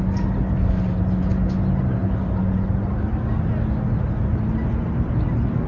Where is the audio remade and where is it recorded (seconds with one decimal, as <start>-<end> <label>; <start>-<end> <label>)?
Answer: 0.0-5.7 recorded